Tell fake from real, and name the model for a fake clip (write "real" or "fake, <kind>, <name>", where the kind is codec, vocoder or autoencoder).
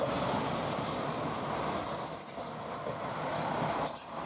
real